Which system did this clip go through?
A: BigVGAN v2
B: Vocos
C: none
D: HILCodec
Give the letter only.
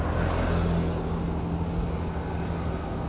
C